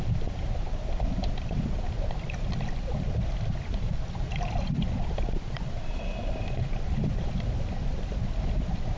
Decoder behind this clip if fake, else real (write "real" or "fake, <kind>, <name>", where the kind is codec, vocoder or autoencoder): real